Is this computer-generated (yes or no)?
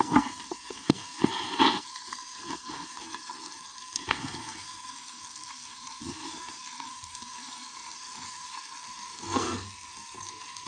yes